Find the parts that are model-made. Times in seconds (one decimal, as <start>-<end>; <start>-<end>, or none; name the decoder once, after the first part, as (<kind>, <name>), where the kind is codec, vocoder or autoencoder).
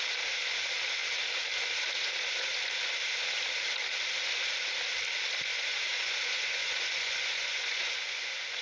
5.5-8.6 (vocoder, Vocos)